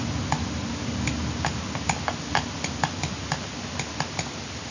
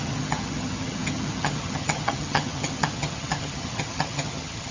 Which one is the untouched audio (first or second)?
first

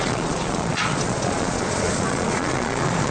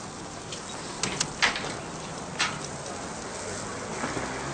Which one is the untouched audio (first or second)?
second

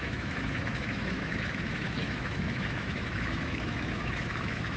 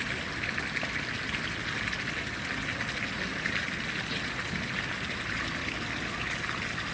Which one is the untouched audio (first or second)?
second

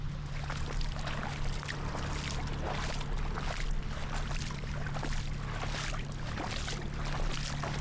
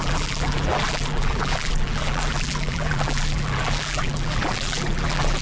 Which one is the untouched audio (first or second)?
first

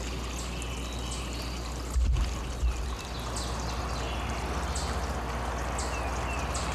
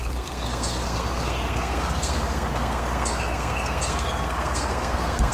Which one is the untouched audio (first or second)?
first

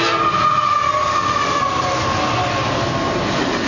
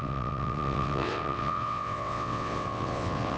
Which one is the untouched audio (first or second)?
first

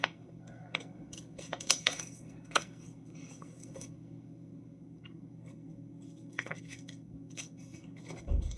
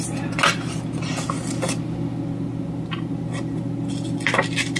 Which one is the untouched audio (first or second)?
second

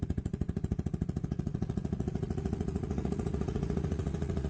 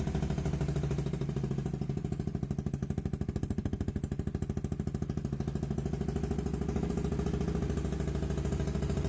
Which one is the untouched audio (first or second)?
second